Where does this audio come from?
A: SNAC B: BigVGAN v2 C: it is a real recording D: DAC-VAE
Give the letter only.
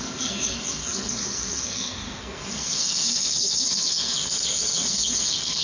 A